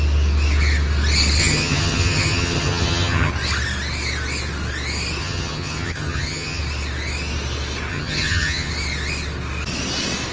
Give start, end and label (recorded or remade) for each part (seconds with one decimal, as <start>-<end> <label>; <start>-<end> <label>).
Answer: 0.0-1.4 recorded; 1.4-3.3 remade; 3.3-5.2 recorded; 5.2-6.6 remade; 6.6-7.9 recorded; 7.9-8.7 remade; 8.7-10.3 recorded